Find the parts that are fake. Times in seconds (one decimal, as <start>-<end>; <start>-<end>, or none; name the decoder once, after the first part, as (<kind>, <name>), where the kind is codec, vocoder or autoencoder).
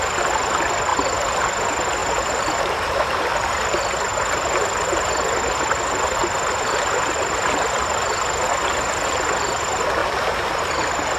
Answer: 2.0-3.2 (vocoder, BigVGAN v2); 10.0-11.2